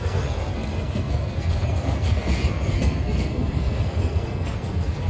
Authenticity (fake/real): fake